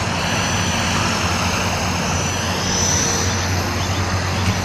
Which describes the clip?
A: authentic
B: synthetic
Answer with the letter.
A